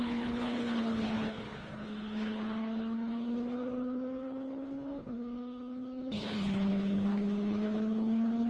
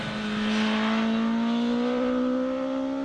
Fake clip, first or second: first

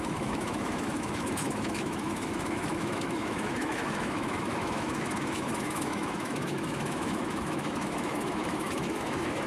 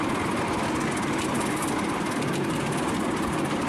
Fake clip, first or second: first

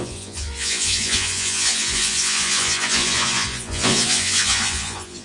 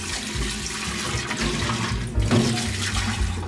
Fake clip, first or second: first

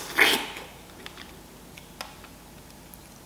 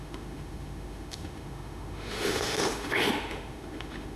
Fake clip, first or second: second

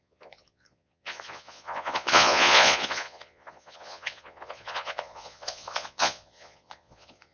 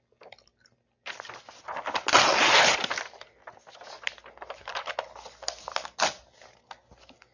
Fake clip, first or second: first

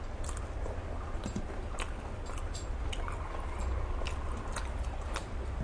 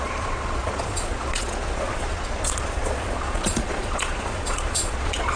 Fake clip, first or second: second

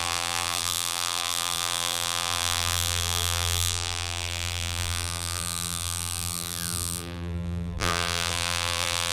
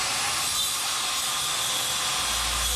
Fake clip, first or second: first